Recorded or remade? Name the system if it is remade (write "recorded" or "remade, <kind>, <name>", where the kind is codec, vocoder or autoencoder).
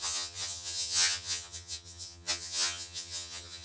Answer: remade, vocoder, HiFi-GAN